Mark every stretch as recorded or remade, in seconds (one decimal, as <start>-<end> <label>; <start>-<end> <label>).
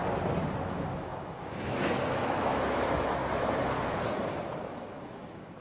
0.0-0.6 recorded; 0.6-5.6 remade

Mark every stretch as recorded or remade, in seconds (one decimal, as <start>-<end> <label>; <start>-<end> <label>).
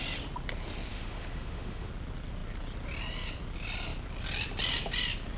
0.0-0.9 recorded; 0.9-1.9 remade; 1.9-5.4 recorded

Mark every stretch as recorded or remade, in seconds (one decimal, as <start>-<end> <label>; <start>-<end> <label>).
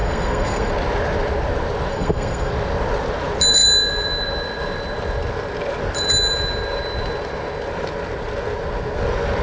0.0-0.7 remade; 0.7-1.9 recorded; 1.9-2.5 remade; 2.5-9.4 recorded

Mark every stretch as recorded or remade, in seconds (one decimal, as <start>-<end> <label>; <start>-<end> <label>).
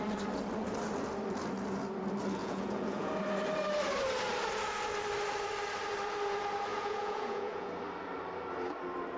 0.0-2.4 recorded; 2.4-3.1 remade; 3.1-6.7 recorded; 6.7-7.7 remade; 7.7-9.2 recorded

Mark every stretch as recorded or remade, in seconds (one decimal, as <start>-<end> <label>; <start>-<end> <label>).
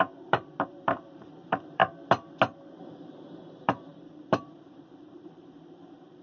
0.0-1.8 remade; 1.8-3.5 recorded; 3.5-6.2 remade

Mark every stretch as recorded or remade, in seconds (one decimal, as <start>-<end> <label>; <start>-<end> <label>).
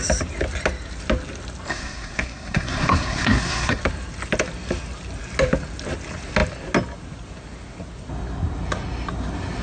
0.0-1.7 recorded; 1.7-3.8 remade; 3.8-9.6 recorded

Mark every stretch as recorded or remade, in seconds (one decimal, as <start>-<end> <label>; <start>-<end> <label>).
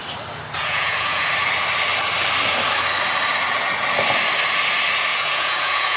0.0-0.6 recorded; 0.6-1.3 remade; 1.3-5.1 recorded; 5.1-6.0 remade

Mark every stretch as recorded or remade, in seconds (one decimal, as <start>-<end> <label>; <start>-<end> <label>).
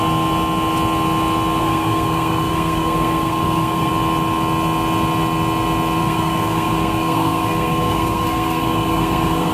0.0-1.6 recorded; 1.6-3.9 remade; 3.9-6.0 recorded; 6.0-9.5 remade